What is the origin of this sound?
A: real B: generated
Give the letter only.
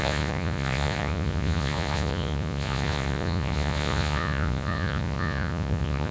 B